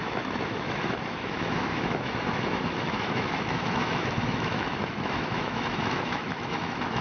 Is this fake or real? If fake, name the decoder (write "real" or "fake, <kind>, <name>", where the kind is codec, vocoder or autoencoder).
fake, autoencoder, DAC-VAE